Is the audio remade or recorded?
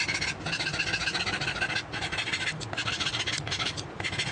recorded